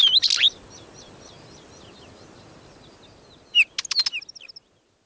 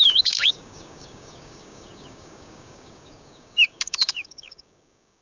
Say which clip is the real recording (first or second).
first